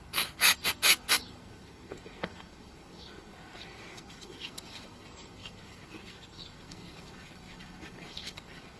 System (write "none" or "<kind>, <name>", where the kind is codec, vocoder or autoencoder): codec, SNAC